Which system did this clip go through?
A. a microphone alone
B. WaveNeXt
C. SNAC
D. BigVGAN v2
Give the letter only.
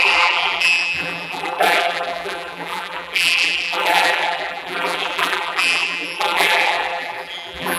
D